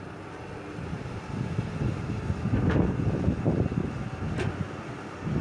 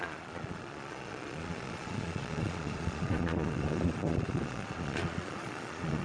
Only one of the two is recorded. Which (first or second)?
first